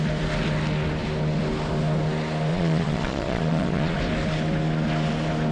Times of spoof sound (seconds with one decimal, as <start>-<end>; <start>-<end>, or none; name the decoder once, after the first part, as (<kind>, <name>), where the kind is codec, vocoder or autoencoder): 2.5-4.0 (vocoder, Vocos)